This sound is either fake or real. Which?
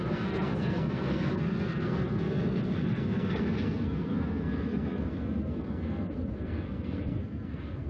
fake